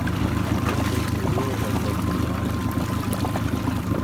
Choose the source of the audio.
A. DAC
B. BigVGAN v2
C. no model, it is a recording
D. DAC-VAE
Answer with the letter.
C